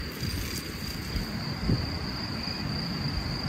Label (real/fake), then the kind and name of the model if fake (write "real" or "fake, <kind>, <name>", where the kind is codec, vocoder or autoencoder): real